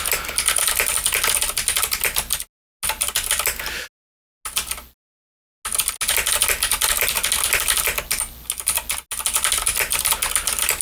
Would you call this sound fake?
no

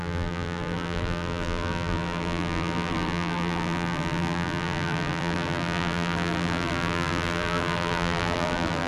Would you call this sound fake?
yes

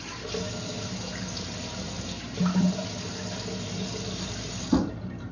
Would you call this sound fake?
no